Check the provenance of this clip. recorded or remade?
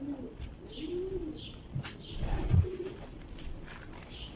recorded